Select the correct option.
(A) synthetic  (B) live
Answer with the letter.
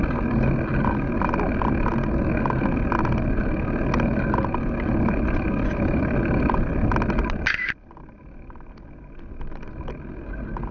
B